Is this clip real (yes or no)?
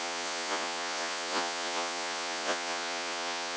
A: no